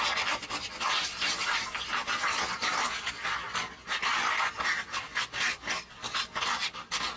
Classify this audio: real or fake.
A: real